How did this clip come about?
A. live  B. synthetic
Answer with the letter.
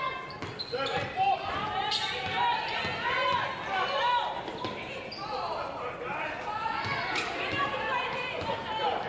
A